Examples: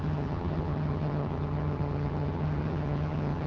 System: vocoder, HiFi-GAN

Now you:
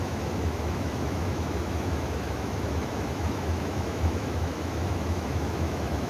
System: autoencoder, DAC-VAE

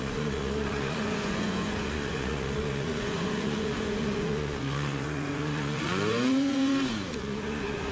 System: vocoder, Vocos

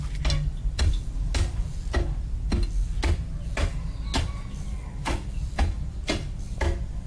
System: none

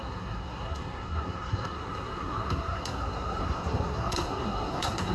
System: codec, SNAC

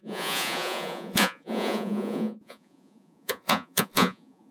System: vocoder, Vocos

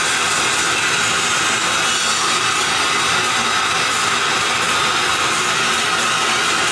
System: none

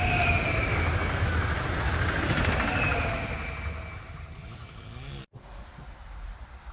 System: none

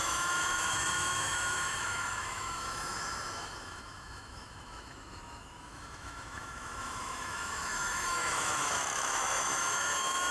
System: autoencoder, DAC-VAE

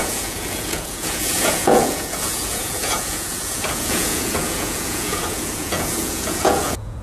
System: vocoder, Vocos